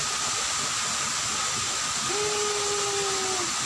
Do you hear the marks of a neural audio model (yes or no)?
no